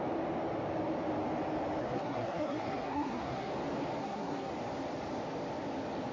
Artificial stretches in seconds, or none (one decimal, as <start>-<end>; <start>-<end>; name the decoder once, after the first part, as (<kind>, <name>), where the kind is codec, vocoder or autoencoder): 1.8-3.5 (codec, SNAC); 4.0-4.5